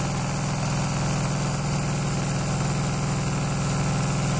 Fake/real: real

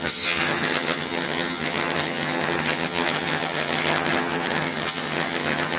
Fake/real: fake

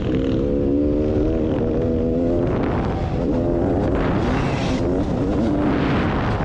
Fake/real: real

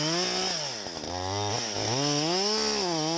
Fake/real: real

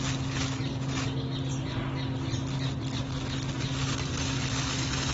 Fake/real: real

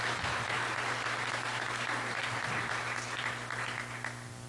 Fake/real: real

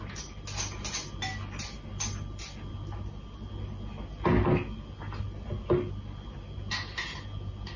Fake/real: real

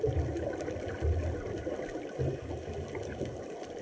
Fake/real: real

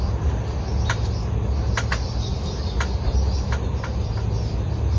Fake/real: real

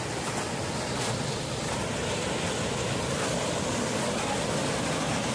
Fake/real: real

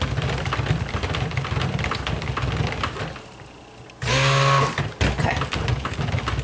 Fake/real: real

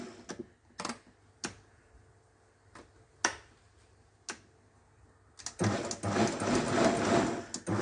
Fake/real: real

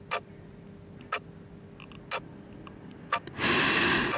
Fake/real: real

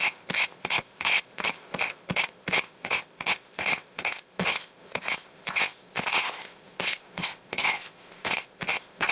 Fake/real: fake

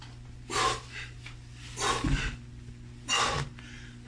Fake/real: real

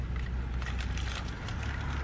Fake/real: real